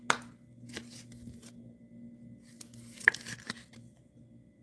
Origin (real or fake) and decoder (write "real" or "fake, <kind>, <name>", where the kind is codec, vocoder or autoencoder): real